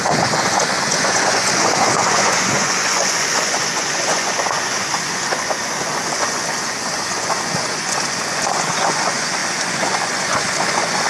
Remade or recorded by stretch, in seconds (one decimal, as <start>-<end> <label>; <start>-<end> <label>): 0.0-11.1 remade